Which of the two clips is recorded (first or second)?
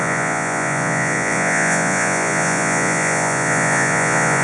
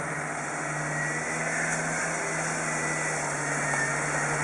second